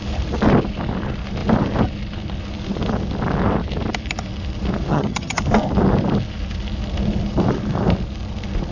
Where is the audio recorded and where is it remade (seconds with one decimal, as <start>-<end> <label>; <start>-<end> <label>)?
0.0-4.9 recorded; 4.9-5.4 remade; 5.4-8.7 recorded